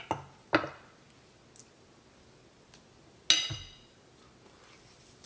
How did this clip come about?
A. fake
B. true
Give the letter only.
B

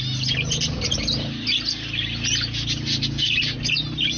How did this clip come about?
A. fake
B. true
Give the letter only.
B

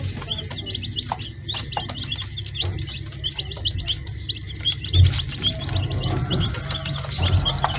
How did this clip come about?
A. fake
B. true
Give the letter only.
B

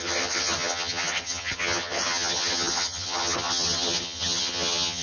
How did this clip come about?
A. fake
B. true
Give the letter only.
A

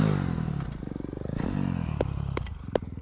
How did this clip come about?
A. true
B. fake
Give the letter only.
A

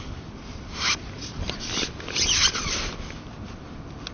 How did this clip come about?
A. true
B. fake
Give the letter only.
A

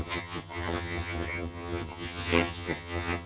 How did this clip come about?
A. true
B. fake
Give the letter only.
B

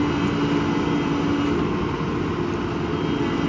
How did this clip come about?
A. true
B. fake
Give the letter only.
A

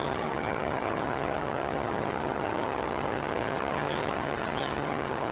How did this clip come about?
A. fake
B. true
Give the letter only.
A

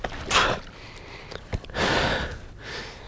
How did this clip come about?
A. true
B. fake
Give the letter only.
A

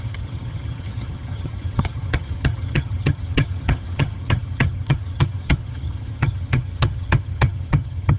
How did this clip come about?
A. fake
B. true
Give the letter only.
A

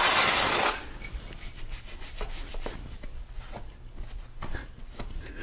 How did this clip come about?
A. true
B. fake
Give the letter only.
A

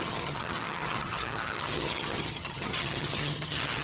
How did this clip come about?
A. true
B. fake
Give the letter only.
B